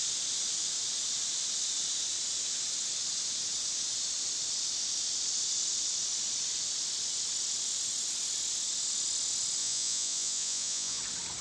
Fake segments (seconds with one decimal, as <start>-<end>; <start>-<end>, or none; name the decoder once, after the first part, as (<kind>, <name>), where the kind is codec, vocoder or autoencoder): 9.6-11.0 (vocoder, Vocos)